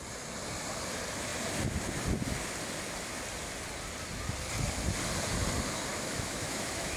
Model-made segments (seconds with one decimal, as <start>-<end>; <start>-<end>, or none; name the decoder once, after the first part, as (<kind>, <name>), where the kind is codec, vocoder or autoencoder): 5.9-7.0 (autoencoder, DAC-VAE)